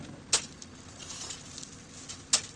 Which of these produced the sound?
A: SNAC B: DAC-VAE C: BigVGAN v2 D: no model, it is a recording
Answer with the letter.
D